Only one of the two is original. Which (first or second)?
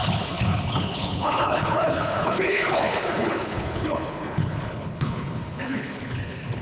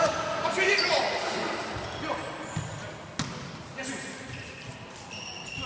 second